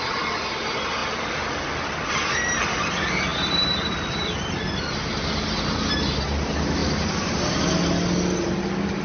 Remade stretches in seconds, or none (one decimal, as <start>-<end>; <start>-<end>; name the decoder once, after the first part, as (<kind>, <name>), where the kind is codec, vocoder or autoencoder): none